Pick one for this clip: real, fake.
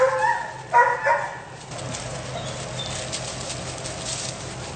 real